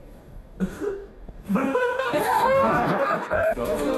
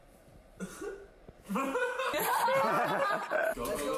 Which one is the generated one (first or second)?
first